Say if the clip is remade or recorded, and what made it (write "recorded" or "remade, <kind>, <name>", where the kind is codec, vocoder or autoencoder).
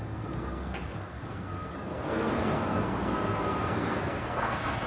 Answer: remade, codec, SNAC